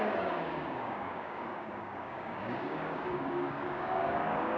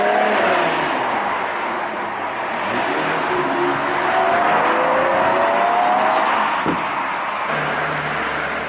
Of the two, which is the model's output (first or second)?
first